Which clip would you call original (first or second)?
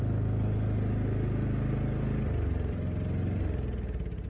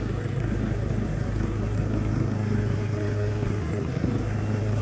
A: first